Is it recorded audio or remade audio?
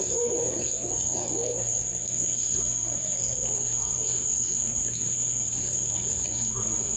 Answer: remade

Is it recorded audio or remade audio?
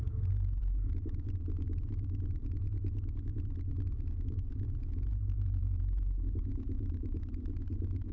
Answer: remade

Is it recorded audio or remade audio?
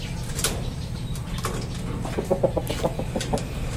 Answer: recorded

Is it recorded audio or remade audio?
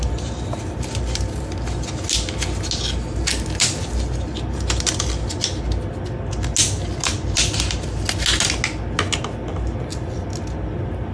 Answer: recorded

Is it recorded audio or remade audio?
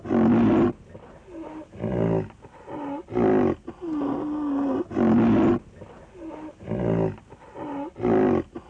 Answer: recorded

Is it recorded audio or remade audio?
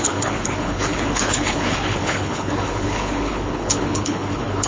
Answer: remade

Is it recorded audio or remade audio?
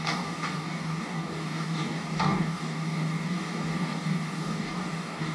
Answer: remade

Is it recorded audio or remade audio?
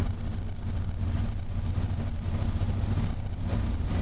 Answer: recorded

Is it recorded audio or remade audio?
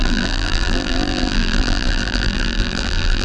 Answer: remade